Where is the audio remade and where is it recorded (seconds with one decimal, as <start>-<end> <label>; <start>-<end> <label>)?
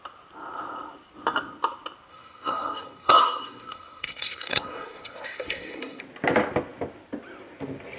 0.0-2.1 recorded; 2.1-6.0 remade; 6.0-8.0 recorded